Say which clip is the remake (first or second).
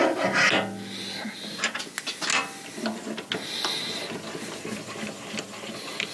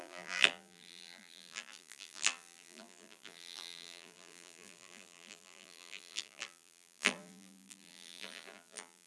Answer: second